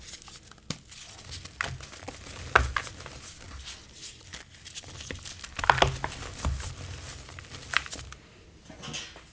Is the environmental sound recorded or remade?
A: recorded